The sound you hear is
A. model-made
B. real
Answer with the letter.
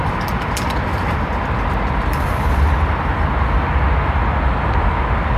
B